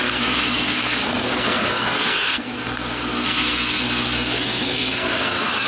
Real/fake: fake